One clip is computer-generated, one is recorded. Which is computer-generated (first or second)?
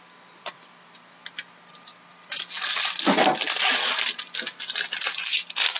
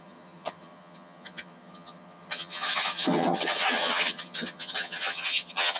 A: second